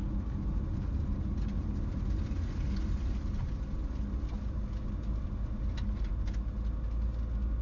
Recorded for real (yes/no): yes